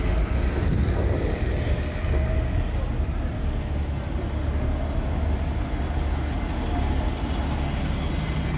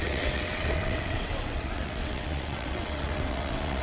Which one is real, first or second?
first